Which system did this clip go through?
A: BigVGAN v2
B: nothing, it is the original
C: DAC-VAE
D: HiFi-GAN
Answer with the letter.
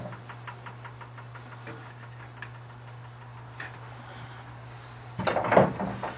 B